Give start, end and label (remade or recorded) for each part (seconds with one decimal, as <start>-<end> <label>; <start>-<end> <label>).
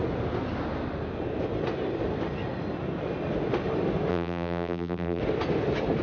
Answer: 0.0-4.1 recorded; 4.1-5.2 remade; 5.2-6.0 recorded